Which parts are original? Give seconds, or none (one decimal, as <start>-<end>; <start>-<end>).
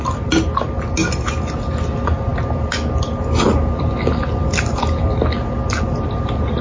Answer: 0.0-6.6